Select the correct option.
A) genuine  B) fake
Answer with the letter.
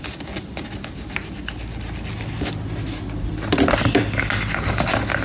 A